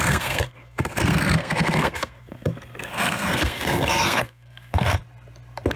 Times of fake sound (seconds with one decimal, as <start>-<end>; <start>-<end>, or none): 0.0-5.0